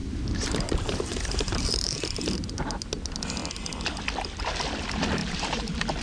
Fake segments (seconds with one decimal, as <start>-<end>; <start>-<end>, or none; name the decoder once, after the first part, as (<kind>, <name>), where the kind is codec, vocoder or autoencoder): 0.0-2.0 (vocoder, BigVGAN v2); 5.2-6.0